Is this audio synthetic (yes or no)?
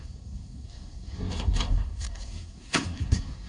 yes